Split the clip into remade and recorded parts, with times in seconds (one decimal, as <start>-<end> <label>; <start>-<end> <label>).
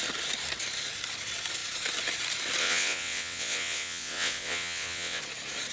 0.0-2.6 recorded; 2.6-5.2 remade; 5.2-5.7 recorded